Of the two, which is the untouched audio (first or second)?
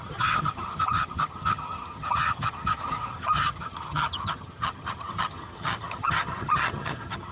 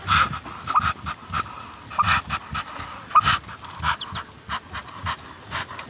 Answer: second